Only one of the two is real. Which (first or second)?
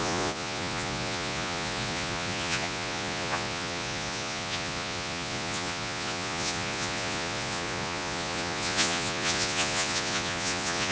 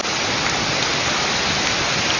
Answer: second